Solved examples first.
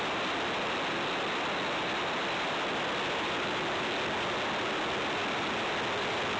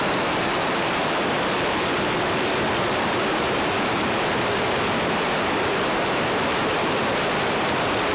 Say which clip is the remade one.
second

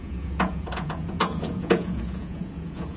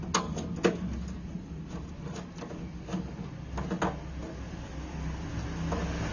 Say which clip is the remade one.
first